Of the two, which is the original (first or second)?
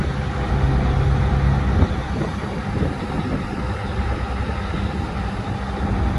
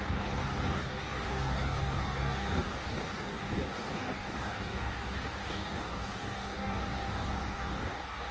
first